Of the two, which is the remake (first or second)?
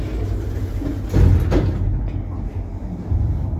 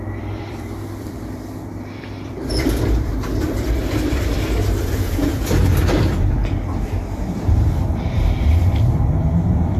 second